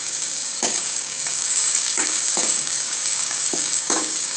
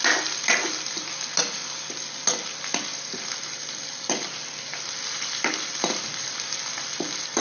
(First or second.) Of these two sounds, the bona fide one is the second